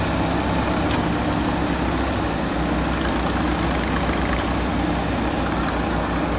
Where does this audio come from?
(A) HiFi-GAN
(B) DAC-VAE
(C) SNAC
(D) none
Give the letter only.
D